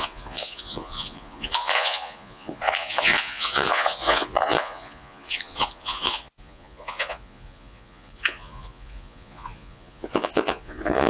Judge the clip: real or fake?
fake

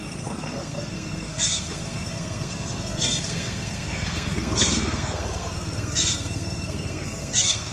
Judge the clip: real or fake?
fake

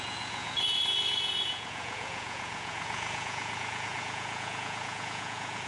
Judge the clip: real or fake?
fake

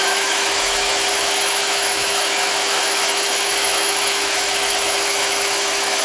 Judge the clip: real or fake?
fake